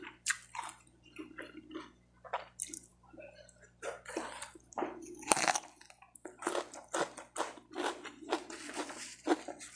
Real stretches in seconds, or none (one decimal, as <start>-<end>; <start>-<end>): 0.0-9.8